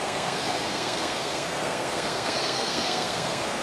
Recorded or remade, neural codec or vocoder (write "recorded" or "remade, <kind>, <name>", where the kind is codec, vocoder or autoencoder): remade, codec, SNAC